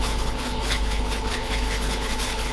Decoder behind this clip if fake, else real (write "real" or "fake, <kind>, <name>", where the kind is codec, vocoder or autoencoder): fake, codec, HILCodec